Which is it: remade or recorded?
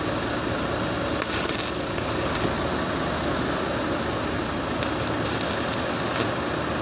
recorded